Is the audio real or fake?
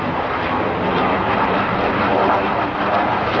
real